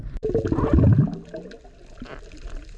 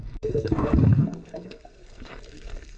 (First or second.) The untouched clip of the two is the first